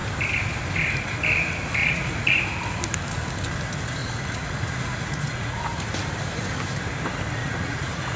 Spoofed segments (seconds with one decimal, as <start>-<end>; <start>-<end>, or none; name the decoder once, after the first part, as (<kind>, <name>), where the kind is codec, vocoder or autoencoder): 1.8-2.4 (vocoder, Vocos); 4.0-5.6; 7.4-8.2